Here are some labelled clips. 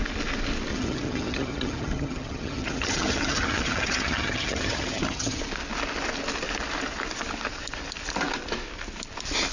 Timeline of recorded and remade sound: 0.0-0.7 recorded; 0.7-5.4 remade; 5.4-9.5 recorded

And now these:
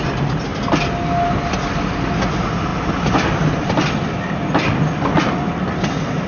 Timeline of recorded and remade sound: 0.0-6.3 recorded

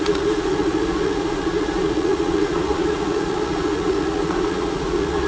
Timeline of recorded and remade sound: 0.0-5.3 remade

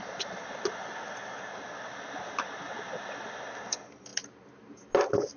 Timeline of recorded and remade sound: 0.0-5.4 recorded

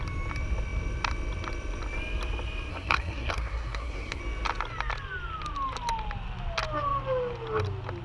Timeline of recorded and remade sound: 0.0-2.7 recorded; 2.7-4.2 remade; 4.2-8.0 recorded

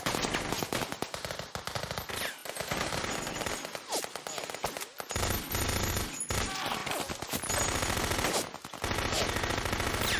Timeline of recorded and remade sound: 0.0-10.2 recorded

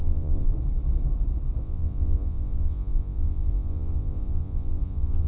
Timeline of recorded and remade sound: 0.0-0.5 remade; 0.5-1.6 recorded; 1.6-5.3 remade

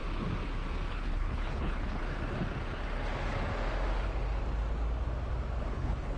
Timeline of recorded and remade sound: 0.0-0.9 recorded; 0.9-2.0 remade; 2.0-5.7 recorded; 5.7-6.2 remade